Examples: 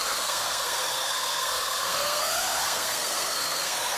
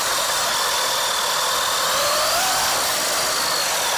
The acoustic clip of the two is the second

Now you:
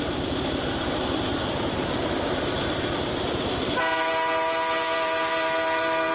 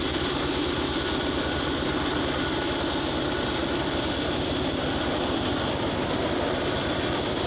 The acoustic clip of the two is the second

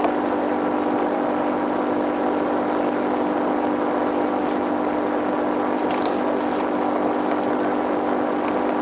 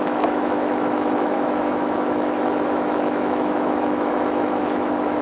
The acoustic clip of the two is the first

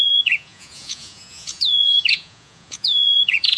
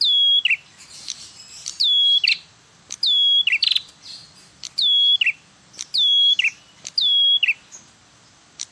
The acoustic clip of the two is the second